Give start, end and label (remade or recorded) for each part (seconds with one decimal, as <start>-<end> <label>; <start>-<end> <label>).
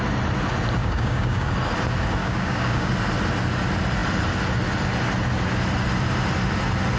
0.0-0.8 recorded; 0.8-1.5 remade; 1.5-2.2 recorded; 2.2-2.9 remade; 2.9-7.0 recorded